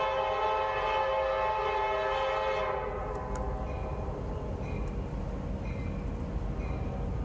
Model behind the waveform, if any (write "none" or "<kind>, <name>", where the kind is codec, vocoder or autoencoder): none